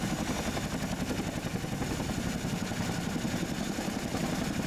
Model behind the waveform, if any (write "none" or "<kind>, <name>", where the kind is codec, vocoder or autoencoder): none